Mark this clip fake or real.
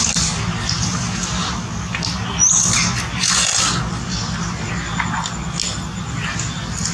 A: real